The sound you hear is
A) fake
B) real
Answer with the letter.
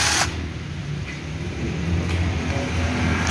B